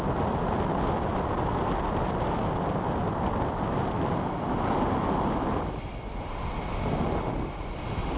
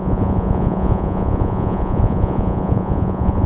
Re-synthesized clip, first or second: second